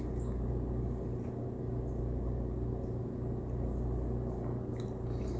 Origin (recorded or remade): recorded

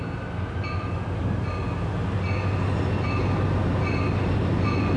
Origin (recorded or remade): recorded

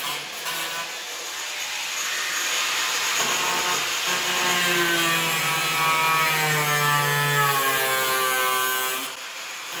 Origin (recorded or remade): recorded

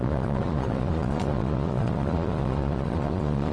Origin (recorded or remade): remade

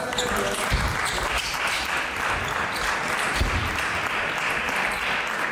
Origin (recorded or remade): recorded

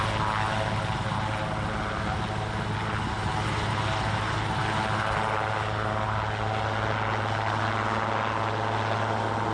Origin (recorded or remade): recorded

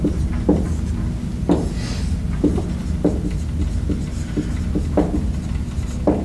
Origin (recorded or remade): recorded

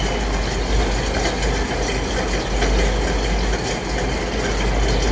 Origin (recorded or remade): recorded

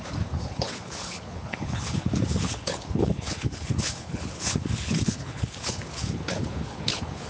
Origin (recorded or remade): remade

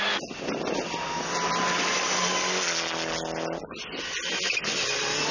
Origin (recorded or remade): recorded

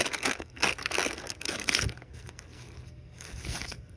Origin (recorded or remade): remade